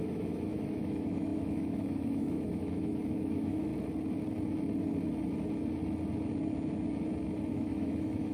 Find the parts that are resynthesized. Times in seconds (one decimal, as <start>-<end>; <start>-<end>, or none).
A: 0.0-3.7; 7.5-8.3